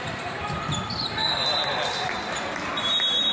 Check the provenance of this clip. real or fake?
fake